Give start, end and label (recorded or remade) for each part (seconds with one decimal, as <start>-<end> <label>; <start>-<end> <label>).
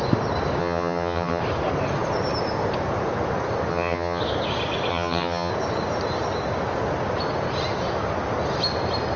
0.0-0.6 recorded; 0.6-1.4 remade; 1.4-3.7 recorded; 3.7-4.2 remade; 4.2-4.9 recorded; 4.9-5.5 remade; 5.5-9.2 recorded